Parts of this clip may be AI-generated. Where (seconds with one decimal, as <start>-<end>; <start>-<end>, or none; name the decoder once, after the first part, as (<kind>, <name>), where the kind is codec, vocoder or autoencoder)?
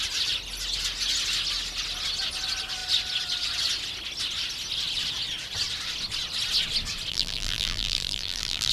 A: 7.1-8.7 (vocoder, BigVGAN v2)